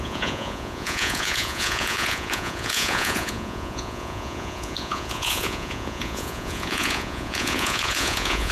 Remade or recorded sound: remade